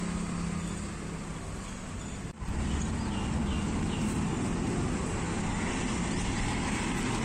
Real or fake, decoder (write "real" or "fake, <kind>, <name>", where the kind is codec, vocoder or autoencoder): real